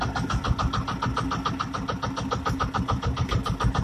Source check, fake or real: real